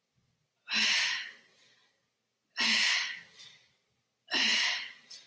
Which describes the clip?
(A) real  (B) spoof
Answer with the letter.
A